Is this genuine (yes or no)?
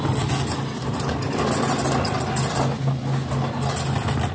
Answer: yes